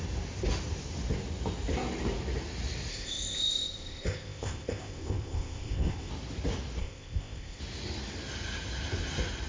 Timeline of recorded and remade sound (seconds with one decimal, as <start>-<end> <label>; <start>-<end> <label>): 0.0-2.9 recorded; 2.9-6.1 remade; 6.1-6.8 recorded; 6.8-7.6 remade; 7.6-9.5 recorded